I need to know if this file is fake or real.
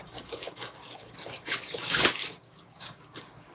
fake